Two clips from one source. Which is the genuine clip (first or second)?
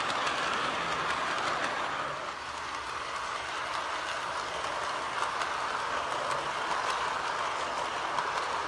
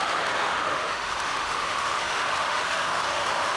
first